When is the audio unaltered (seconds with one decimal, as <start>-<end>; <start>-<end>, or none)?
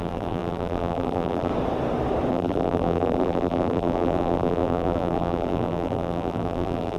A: 1.5-2.3